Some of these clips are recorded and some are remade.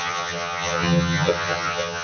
remade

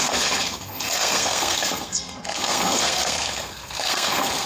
remade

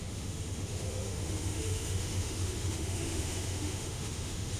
remade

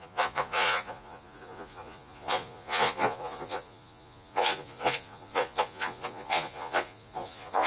remade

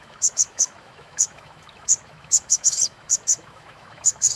remade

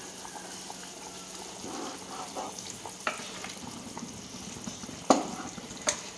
recorded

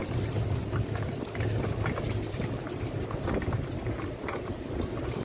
recorded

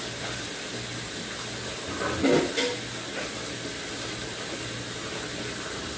recorded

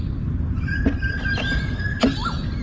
recorded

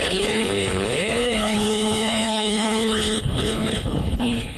remade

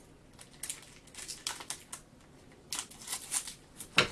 recorded